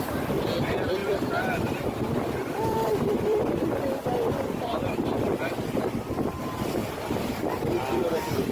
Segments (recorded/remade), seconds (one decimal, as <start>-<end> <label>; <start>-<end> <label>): 0.0-1.0 recorded; 1.0-3.4 remade; 3.4-8.5 recorded